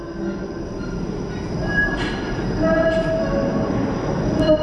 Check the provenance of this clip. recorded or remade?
recorded